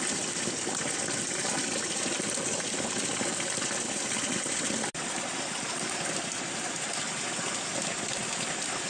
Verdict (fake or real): real